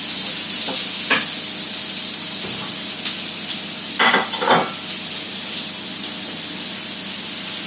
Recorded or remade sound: recorded